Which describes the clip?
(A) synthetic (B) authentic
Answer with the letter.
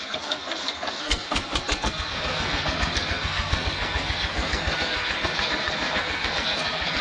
A